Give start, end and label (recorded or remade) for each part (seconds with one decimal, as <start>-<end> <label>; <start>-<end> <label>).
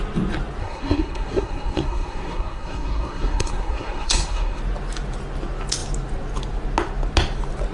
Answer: 0.0-0.6 recorded; 0.6-4.6 remade; 4.6-7.7 recorded